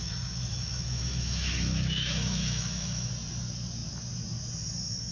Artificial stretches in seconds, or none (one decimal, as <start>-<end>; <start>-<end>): 0.0-3.1